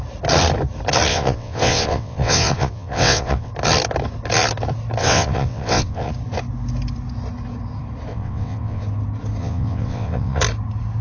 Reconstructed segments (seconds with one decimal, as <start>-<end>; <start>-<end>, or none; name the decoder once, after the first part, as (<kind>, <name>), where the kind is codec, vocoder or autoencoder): 1.1-3.5 (vocoder, WaveNeXt); 5.0-6.1; 8.1-8.8; 9.4-10.4

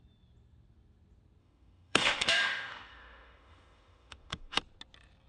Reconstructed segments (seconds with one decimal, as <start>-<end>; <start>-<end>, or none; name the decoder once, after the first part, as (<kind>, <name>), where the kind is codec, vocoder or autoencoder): 1.4-4.6 (autoencoder, DAC-VAE)